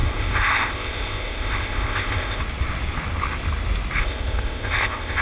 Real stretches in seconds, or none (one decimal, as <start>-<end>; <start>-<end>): 2.4-4.0